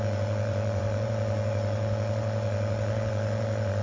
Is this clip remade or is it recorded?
remade